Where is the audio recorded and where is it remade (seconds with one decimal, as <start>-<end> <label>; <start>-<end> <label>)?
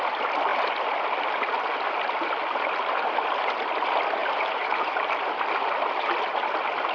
0.0-4.2 recorded; 4.2-5.1 remade; 5.1-6.9 recorded